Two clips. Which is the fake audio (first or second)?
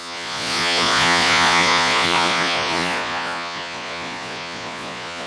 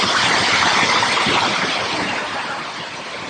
first